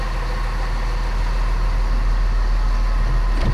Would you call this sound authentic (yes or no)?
yes